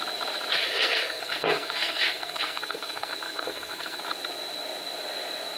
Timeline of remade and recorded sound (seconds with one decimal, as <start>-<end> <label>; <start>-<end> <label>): 0.0-0.6 recorded; 0.6-4.0 remade; 4.0-5.6 recorded